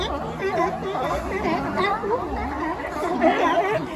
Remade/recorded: recorded